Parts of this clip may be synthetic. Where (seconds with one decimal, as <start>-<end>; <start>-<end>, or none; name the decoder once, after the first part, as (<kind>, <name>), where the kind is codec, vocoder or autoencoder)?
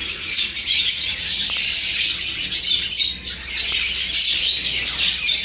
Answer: 0.0-1.5 (vocoder, Vocos)